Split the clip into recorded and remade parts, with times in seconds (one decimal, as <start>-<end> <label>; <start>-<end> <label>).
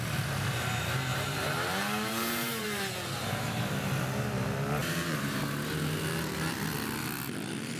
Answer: 0.0-1.1 recorded; 1.1-3.6 remade; 3.6-4.8 recorded; 4.8-5.4 remade; 5.4-7.8 recorded